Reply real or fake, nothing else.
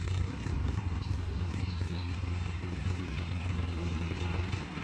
fake